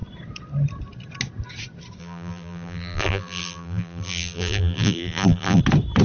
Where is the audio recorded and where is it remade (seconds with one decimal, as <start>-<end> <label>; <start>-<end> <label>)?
0.0-2.0 recorded; 2.0-5.6 remade; 5.6-6.0 recorded